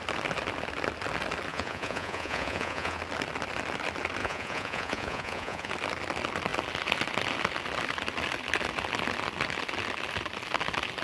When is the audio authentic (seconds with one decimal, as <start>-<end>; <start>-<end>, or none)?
0.0-1.5; 3.0-4.2; 5.7-11.0